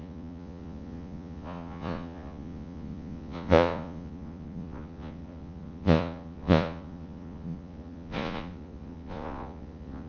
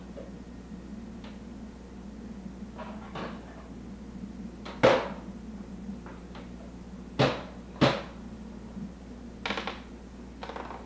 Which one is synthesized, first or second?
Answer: first